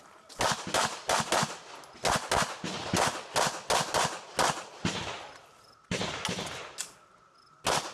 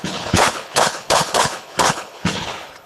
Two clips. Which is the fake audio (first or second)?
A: second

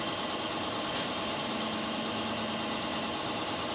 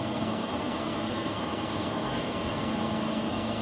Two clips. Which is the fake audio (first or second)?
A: second